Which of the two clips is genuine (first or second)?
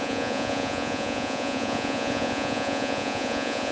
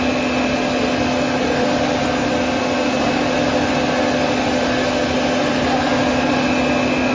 second